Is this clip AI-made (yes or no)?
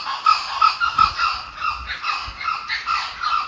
no